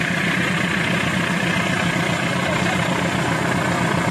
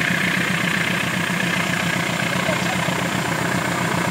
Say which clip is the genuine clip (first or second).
second